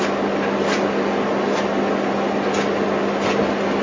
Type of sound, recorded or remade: recorded